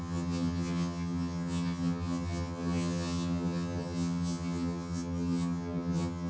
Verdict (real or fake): fake